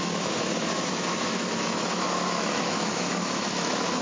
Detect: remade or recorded remade